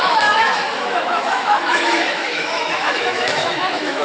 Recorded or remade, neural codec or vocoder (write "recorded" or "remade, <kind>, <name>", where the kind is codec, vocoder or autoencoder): remade, autoencoder, DAC-VAE